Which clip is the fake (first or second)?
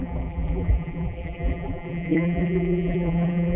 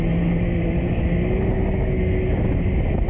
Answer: first